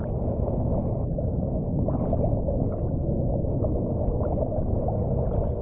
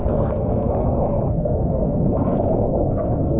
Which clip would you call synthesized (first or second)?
second